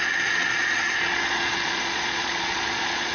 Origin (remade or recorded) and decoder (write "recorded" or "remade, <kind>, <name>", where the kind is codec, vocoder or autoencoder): remade, vocoder, Vocos